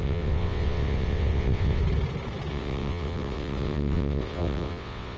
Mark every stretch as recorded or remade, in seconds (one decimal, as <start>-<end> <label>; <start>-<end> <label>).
0.0-1.8 remade; 1.8-2.5 recorded; 2.5-5.2 remade